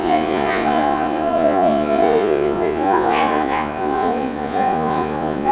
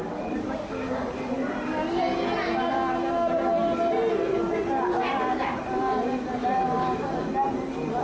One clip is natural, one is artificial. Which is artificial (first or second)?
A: first